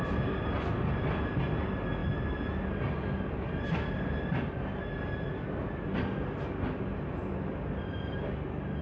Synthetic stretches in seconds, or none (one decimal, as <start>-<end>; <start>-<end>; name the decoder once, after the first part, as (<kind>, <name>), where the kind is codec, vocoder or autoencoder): none